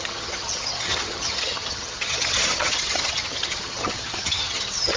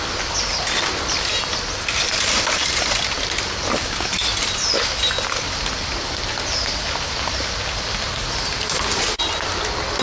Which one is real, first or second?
second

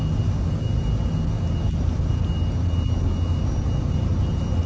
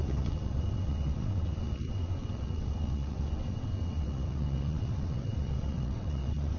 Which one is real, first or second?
first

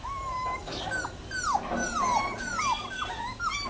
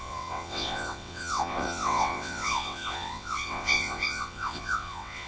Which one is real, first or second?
first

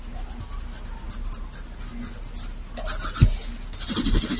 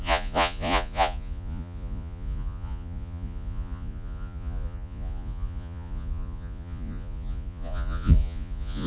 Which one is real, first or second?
first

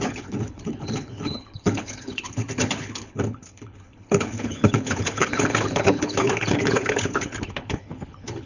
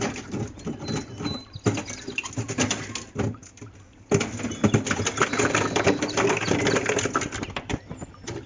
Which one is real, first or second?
second